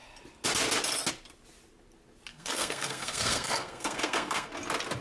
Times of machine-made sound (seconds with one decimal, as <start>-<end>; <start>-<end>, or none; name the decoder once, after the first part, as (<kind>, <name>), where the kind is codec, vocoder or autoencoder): 2.3-4.5 (codec, SNAC)